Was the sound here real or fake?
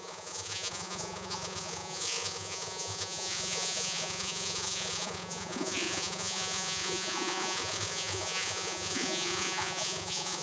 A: fake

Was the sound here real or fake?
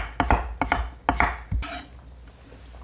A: real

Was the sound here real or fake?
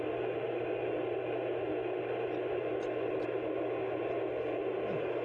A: real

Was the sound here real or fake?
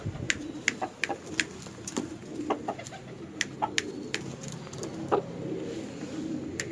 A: real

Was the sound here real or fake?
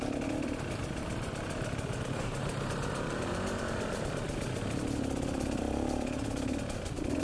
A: fake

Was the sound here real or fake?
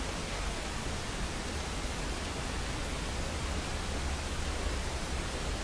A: real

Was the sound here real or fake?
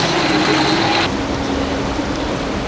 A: real